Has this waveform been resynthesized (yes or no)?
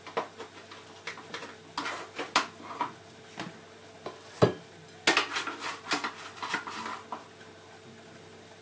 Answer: no